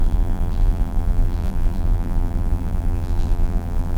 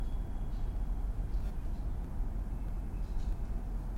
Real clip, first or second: second